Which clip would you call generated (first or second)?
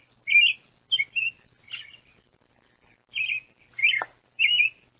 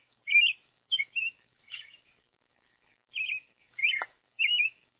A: second